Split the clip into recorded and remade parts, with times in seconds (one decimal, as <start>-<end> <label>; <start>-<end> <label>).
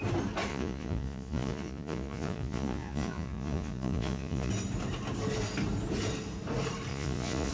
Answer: 0.0-0.5 recorded; 0.5-4.5 remade; 4.5-6.9 recorded; 6.9-7.5 remade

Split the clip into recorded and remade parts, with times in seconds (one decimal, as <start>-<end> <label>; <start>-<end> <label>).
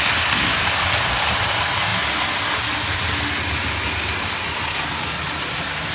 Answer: 0.0-5.9 recorded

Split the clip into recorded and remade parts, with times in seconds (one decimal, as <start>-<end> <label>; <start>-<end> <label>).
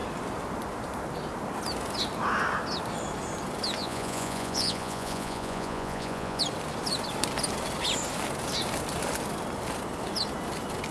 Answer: 0.0-3.8 recorded; 3.8-6.4 remade; 6.4-10.9 recorded